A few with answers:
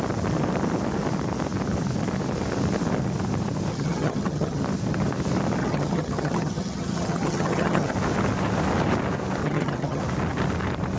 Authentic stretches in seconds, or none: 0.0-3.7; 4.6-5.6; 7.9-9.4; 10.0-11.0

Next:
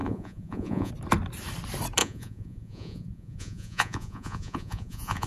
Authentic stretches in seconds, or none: 0.9-2.0

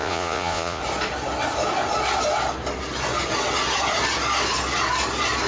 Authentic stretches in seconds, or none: 0.8-5.5